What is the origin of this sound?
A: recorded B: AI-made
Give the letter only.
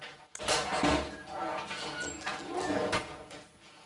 A